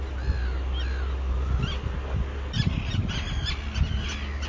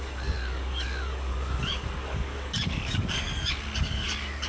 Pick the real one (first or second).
first